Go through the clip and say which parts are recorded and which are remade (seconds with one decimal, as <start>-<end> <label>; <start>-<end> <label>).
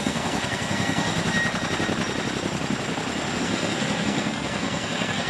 0.0-1.1 remade; 1.1-3.4 recorded; 3.4-5.3 remade